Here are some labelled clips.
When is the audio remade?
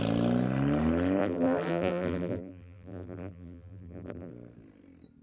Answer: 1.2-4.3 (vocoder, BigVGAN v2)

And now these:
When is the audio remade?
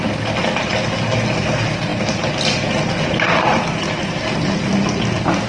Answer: none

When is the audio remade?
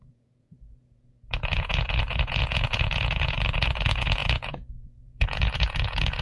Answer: 0.0-6.2 (vocoder, Vocos)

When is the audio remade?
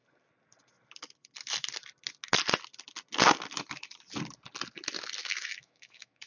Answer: 5.2-6.3 (autoencoder, DAC-VAE)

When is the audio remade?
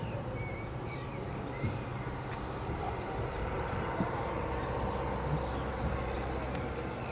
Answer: none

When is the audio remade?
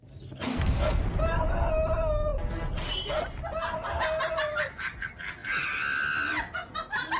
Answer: 0.5-1.0 (codec, SNAC)